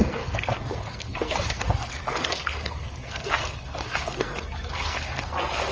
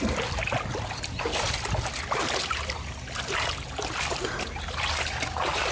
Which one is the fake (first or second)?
first